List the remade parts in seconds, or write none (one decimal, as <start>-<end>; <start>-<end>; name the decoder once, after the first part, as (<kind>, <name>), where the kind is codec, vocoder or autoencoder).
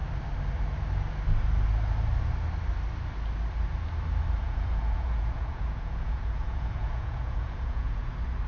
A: 4.4-8.1 (vocoder, Vocos)